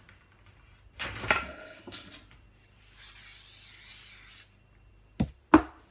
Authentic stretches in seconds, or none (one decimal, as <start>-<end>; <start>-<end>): 0.0-1.5; 2.1-5.9